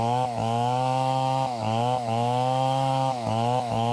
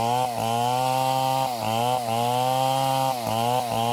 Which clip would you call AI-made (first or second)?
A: first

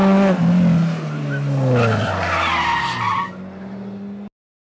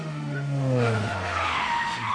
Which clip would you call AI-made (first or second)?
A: second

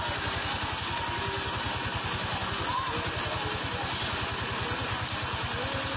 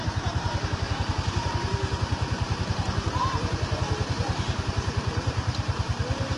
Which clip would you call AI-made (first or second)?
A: second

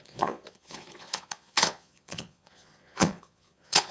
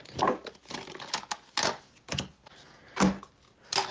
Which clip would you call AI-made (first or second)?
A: first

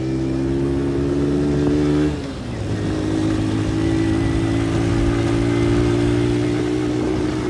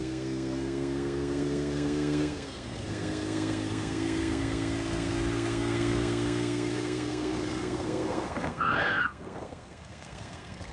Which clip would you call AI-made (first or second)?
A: second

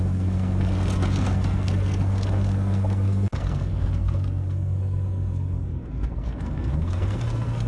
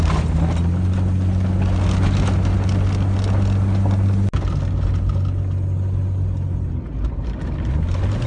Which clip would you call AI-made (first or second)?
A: first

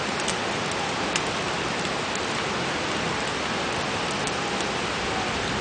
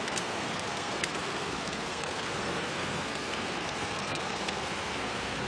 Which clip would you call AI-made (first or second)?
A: second